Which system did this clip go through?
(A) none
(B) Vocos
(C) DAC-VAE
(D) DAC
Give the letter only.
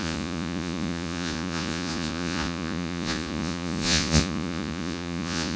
B